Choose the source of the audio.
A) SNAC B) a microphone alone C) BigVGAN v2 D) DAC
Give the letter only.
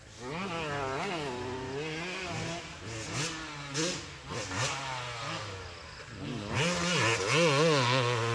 B